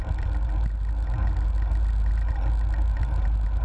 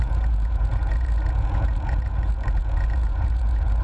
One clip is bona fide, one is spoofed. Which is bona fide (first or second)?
first